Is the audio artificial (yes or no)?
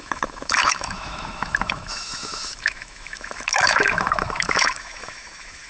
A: yes